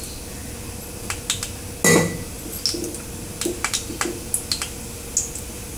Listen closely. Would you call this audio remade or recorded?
recorded